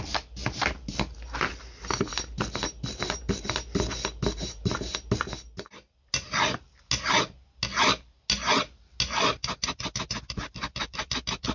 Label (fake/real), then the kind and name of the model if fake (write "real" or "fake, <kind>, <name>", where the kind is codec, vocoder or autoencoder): real